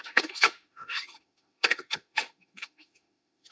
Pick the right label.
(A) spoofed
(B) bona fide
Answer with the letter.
A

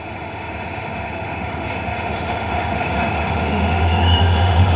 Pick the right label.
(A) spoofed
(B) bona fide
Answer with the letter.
A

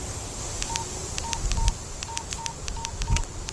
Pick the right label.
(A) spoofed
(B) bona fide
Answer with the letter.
A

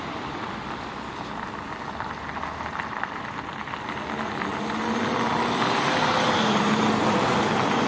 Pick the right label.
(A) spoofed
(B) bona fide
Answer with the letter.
B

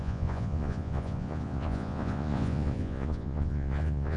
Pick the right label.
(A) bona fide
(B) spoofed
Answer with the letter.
B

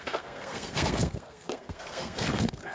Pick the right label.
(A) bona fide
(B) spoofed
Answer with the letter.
B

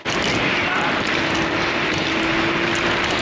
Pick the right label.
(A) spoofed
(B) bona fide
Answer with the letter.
B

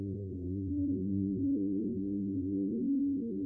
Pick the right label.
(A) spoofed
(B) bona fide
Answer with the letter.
A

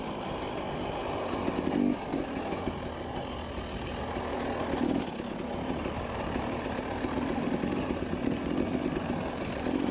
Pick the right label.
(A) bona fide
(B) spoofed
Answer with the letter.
A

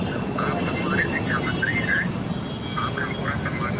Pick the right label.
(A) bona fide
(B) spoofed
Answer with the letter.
A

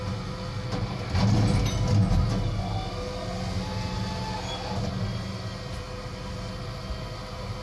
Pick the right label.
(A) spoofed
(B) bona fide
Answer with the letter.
B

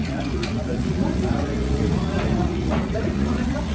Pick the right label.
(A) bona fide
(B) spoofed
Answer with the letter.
B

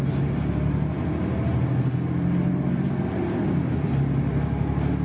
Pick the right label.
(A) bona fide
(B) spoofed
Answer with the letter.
A